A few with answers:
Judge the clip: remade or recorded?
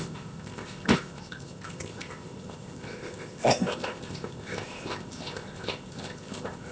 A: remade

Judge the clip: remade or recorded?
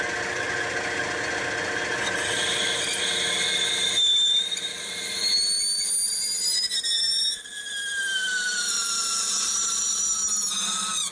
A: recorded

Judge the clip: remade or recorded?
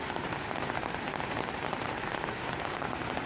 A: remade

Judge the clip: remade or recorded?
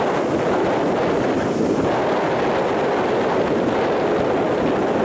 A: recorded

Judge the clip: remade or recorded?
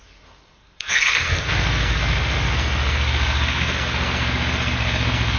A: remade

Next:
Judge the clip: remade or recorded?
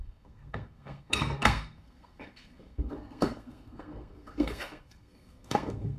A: remade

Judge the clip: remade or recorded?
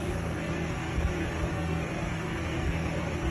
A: remade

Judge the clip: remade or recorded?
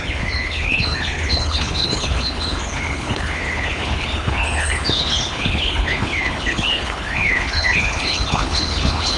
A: remade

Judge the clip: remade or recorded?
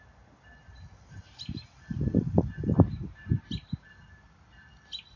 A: recorded